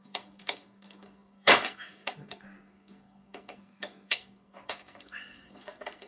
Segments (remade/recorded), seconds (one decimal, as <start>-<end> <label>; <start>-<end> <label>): 0.0-6.1 remade